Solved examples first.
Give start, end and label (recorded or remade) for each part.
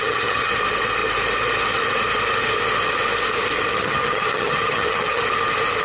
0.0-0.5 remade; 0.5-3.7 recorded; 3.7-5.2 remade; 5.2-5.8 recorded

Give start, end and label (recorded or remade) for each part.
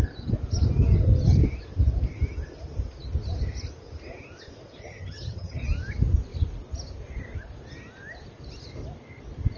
0.0-4.8 recorded; 4.8-5.6 remade; 5.6-9.6 recorded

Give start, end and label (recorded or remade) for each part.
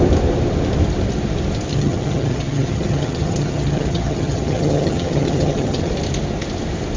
0.0-1.7 recorded; 1.7-5.9 remade; 5.9-7.0 recorded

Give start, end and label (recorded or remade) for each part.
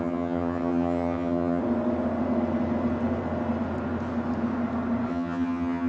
0.0-1.6 remade; 1.6-5.1 recorded; 5.1-5.9 remade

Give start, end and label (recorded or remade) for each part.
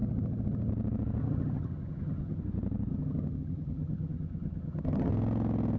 0.0-0.7 remade; 0.7-1.2 recorded; 1.2-2.4 remade; 2.4-2.9 recorded; 2.9-5.1 remade; 5.1-5.8 recorded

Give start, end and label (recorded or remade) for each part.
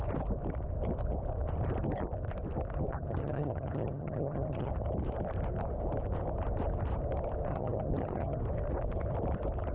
0.0-2.9 recorded; 2.9-4.7 remade; 4.7-7.5 recorded; 7.5-8.4 remade; 8.4-9.7 recorded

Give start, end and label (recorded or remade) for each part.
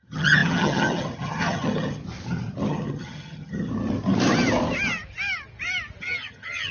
0.0-2.0 remade; 2.0-2.7 recorded; 2.7-3.7 remade; 3.7-6.0 recorded; 6.0-6.7 remade